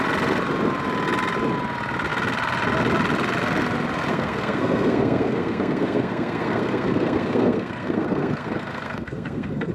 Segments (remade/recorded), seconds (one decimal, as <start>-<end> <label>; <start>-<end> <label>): 0.0-4.1 recorded; 4.1-9.7 remade